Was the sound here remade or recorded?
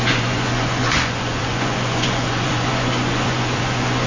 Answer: remade